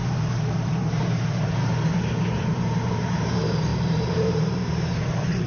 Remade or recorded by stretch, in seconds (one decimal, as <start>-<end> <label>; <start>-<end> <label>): 0.0-5.5 remade